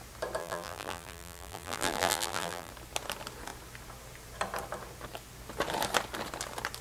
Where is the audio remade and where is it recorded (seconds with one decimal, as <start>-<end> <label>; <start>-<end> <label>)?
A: 0.0-0.4 recorded; 0.4-2.7 remade; 2.7-6.8 recorded